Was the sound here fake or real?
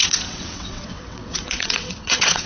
fake